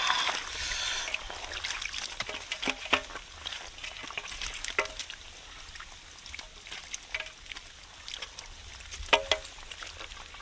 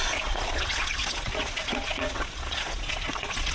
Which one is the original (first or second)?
first